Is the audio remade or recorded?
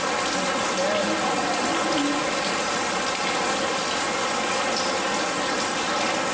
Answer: recorded